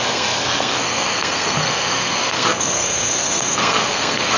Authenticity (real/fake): fake